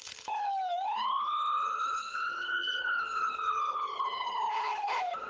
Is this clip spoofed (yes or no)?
yes